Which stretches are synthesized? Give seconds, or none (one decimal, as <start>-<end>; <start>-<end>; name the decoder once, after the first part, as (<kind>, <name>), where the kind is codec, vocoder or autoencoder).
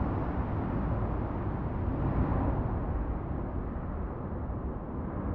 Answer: none